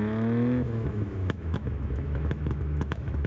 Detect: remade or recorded remade